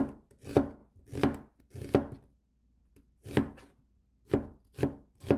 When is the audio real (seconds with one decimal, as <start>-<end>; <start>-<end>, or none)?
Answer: 0.0-2.8; 3.6-5.4